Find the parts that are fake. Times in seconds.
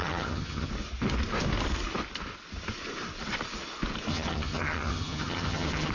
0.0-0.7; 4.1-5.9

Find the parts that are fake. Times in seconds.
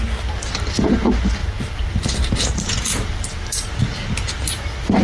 1.4-3.8